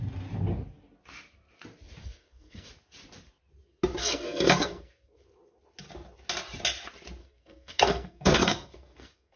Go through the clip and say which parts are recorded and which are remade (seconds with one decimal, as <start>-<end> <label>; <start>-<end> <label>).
0.0-2.0 recorded; 2.0-2.7 remade; 2.7-4.0 recorded; 4.0-5.2 remade; 5.2-7.2 recorded; 7.2-9.4 remade